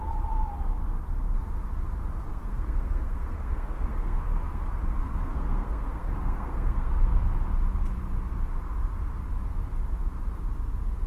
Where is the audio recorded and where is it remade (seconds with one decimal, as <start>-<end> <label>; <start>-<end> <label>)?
0.0-2.3 recorded; 2.3-7.2 remade; 7.2-11.1 recorded